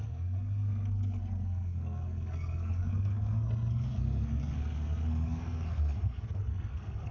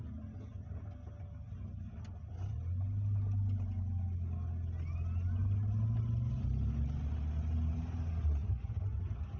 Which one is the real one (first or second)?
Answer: second